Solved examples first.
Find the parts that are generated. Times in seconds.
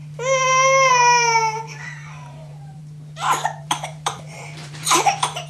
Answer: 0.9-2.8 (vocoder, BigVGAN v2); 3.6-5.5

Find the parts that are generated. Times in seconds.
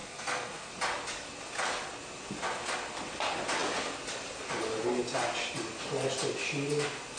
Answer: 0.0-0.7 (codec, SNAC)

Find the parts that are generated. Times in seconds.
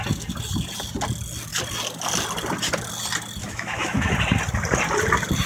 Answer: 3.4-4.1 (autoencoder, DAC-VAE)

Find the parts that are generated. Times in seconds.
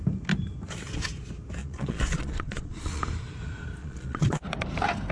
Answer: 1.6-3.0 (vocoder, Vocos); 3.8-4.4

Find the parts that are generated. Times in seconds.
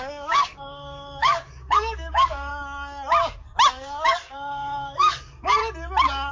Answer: 0.0-2.5 (codec, DAC); 3.7-5.6